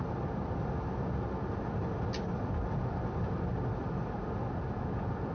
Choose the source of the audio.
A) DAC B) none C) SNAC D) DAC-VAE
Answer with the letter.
B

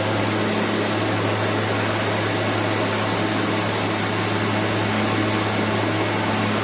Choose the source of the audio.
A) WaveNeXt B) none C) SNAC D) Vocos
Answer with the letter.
B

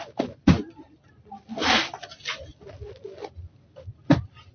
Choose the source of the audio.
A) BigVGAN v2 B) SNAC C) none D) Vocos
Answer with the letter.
C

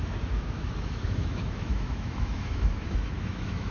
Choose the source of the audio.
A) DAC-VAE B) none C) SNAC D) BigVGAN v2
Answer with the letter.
A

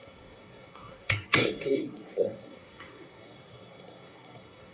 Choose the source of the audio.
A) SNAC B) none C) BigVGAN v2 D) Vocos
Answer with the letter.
A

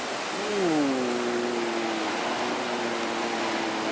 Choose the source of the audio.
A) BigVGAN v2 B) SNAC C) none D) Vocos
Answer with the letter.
C